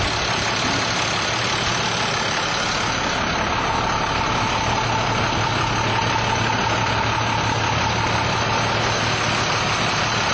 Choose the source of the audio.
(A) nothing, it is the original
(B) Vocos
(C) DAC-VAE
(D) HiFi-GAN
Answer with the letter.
A